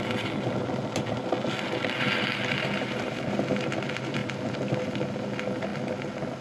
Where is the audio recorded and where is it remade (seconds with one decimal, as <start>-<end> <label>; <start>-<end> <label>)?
0.0-6.4 recorded